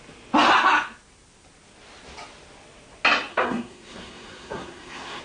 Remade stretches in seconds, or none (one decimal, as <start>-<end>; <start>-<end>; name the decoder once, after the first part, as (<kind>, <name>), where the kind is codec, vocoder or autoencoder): 3.3-5.2 (codec, SNAC)

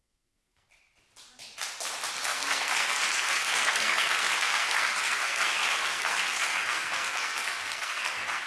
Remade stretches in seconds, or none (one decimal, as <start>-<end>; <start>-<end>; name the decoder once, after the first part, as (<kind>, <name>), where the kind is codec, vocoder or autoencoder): 0.0-0.7 (codec, SNAC); 2.1-8.5

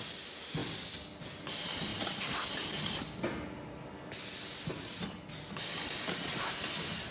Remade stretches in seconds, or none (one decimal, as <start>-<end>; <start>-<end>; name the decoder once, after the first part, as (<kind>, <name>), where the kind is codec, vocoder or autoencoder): none

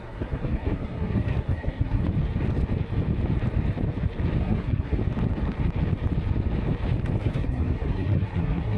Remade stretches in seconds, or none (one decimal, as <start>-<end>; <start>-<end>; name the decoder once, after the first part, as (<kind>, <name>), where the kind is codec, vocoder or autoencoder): 0.0-2.0 (codec, SNAC); 4.4-5.0; 7.2-8.8